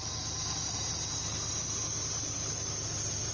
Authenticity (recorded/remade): recorded